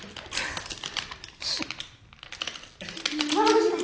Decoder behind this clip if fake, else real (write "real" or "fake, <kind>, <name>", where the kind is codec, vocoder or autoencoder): real